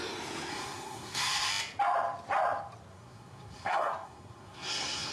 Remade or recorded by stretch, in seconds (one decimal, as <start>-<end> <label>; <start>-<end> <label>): 0.0-0.5 recorded; 0.5-1.5 remade; 1.5-2.9 recorded; 2.9-5.1 remade